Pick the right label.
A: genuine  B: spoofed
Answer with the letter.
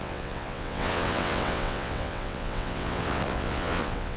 B